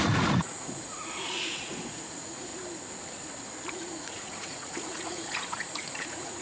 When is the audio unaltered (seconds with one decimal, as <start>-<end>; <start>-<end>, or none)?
2.5-3.7